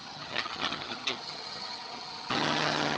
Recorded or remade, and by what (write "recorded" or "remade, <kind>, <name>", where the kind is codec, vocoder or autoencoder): remade, vocoder, HiFi-GAN